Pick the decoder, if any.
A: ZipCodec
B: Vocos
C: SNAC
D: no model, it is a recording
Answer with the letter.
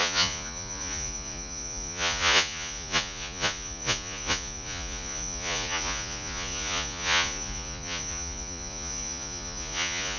B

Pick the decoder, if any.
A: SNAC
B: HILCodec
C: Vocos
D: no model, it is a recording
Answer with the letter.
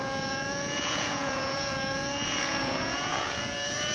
C